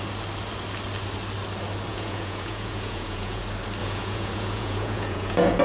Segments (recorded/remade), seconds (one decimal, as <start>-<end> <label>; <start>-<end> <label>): 0.0-1.9 recorded; 1.9-3.4 remade; 3.4-3.8 recorded; 3.8-5.6 remade